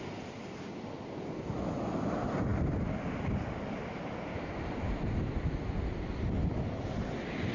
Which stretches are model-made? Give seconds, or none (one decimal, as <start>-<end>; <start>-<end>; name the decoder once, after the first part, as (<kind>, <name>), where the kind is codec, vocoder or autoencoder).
none